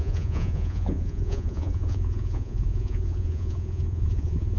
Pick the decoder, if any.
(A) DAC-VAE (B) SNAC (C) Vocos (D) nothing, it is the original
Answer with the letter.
C